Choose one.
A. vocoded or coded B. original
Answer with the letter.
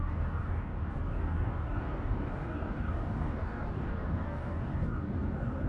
A